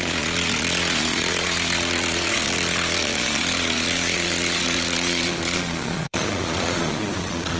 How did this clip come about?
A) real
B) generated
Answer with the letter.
B